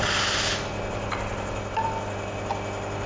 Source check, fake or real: real